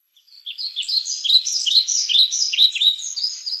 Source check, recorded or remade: remade